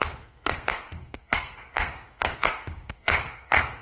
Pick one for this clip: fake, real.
fake